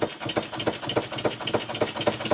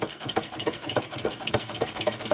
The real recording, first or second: first